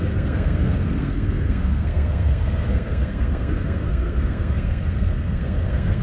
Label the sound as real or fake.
fake